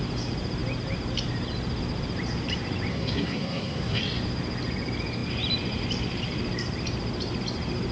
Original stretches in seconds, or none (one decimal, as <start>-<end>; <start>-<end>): 0.0-2.9; 4.0-7.9